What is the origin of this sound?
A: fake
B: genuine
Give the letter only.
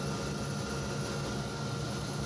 B